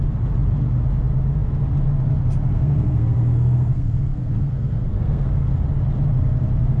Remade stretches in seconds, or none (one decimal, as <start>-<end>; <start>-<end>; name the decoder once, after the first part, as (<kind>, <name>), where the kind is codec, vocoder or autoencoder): 2.5-5.5 (codec, SNAC)

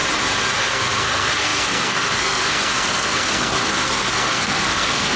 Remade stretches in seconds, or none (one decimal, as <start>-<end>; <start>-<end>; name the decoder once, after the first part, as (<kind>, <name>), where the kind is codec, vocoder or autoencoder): 0.6-5.2 (codec, SNAC)

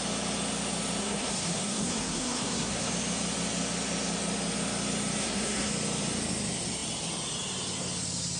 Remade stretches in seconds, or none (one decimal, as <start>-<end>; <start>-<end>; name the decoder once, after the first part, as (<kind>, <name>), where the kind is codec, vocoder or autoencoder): 1.0-2.9 (codec, SNAC); 5.2-5.7

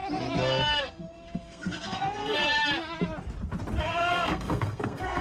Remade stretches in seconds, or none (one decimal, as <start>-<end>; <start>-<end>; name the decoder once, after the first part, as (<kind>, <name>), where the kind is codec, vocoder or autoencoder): 0.8-2.4 (codec, SNAC); 3.8-5.2

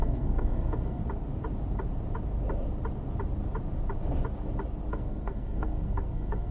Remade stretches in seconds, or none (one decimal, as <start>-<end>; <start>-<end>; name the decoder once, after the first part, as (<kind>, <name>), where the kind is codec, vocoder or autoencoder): 0.0-1.0 (codec, SNAC); 4.9-6.5

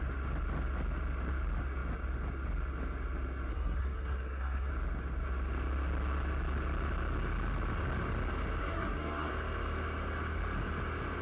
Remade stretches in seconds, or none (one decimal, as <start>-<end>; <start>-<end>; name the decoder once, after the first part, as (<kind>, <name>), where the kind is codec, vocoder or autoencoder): 3.5-4.7 (codec, SNAC); 8.6-9.3